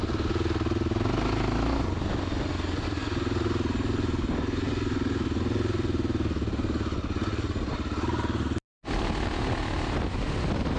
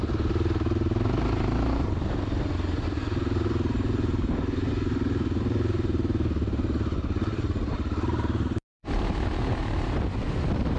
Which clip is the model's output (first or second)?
second